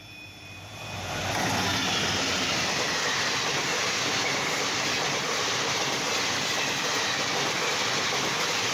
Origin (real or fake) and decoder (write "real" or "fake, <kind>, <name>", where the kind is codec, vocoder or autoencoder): real